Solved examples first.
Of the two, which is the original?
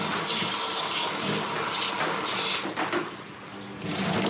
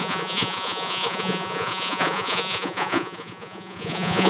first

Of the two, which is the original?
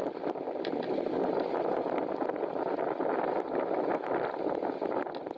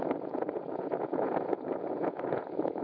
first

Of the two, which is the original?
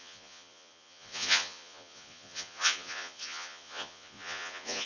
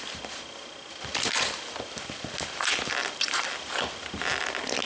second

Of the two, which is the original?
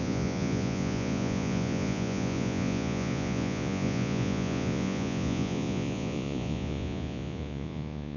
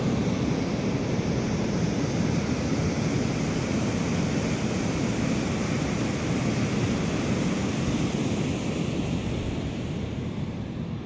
second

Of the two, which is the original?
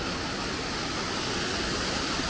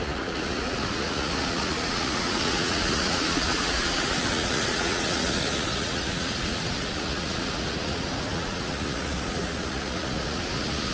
first